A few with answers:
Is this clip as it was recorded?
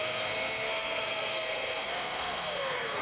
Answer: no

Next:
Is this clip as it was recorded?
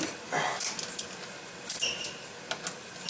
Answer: yes